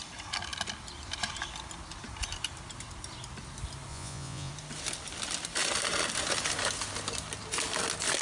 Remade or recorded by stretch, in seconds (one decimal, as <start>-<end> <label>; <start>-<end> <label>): 0.0-3.9 recorded; 3.9-4.5 remade; 4.5-8.2 recorded